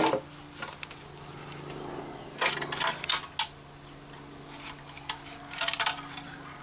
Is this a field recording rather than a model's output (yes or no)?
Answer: yes